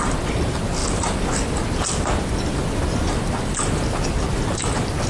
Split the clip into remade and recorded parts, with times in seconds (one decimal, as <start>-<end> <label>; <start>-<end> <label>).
0.0-5.1 recorded